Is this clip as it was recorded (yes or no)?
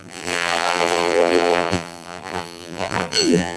no